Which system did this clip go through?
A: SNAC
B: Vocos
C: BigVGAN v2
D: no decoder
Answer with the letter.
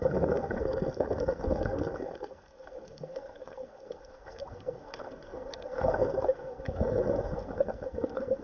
A